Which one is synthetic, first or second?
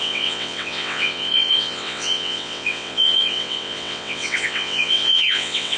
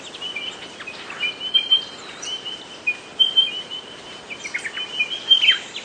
first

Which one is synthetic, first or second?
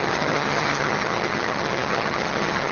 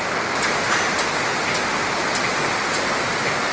first